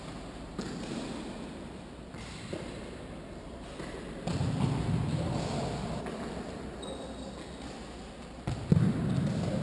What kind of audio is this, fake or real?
real